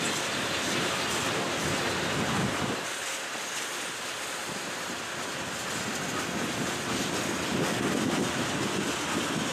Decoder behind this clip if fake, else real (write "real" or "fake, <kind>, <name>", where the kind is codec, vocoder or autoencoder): real